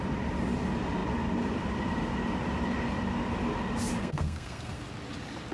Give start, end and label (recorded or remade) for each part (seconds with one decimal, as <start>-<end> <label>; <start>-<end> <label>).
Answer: 0.0-4.0 recorded; 4.0-4.8 remade; 4.8-5.5 recorded